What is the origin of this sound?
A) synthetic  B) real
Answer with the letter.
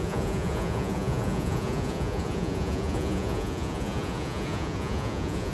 A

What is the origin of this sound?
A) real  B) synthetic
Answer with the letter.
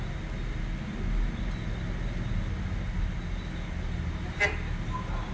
A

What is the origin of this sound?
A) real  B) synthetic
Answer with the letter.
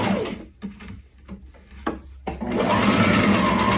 A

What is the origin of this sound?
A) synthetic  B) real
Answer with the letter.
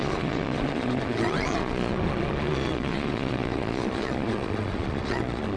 A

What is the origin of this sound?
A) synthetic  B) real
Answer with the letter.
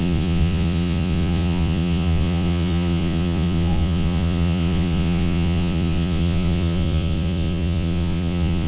A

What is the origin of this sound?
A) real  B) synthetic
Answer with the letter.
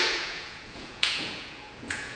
B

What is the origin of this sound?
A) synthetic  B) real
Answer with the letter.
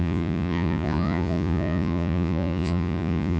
A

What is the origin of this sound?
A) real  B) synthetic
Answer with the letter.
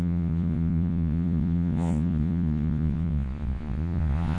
B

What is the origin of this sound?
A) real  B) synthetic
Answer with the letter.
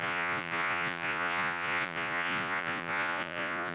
B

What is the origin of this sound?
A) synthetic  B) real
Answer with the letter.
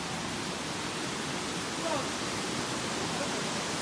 B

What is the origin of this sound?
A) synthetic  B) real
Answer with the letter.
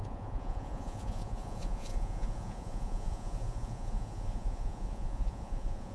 A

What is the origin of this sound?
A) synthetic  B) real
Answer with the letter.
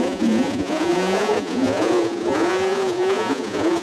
A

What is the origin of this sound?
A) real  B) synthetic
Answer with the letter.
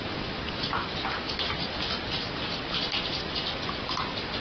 A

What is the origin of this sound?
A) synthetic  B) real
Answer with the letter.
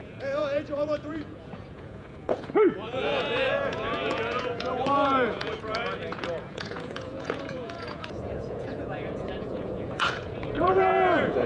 A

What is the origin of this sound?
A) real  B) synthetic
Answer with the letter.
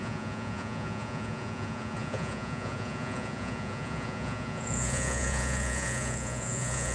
B